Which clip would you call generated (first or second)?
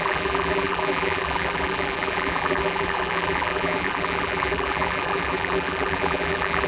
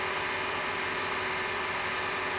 first